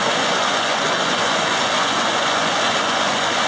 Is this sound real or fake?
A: fake